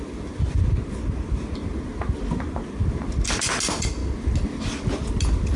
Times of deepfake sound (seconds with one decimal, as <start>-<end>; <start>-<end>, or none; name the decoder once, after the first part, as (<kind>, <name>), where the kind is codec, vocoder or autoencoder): none